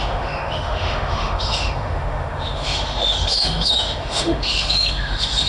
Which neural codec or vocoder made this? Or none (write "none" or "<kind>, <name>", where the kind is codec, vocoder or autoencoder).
autoencoder, DAC-VAE